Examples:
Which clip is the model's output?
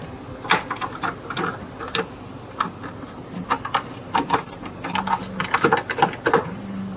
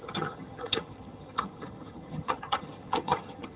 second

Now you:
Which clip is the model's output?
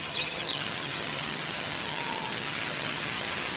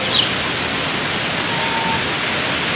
first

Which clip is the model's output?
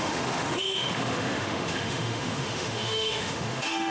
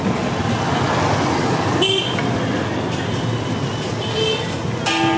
first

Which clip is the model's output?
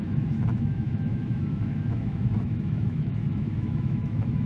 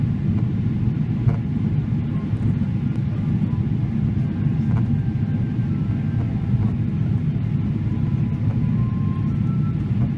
first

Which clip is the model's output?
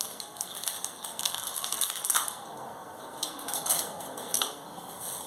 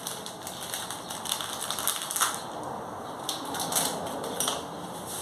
first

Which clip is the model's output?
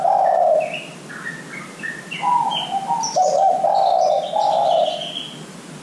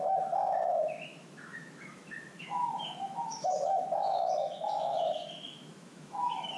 second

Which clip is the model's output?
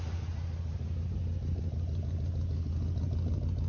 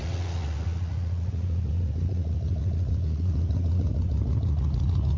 second